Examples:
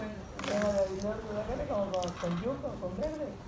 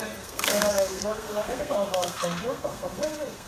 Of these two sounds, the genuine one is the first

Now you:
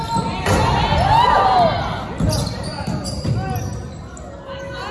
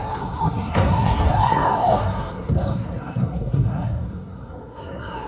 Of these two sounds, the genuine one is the first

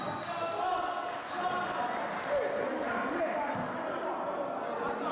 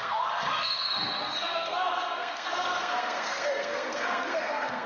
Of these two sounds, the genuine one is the first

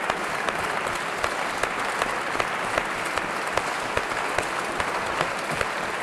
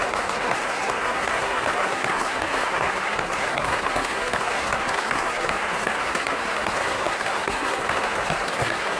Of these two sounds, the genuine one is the first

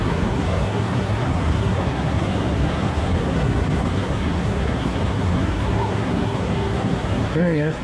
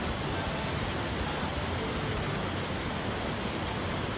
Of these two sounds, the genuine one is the second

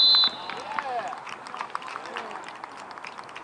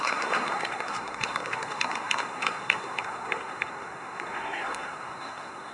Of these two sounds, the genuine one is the first